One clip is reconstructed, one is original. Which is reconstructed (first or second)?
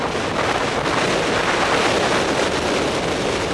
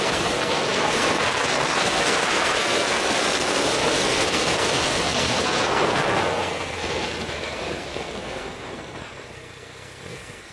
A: second